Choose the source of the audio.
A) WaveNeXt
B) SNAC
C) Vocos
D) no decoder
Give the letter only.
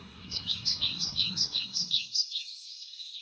B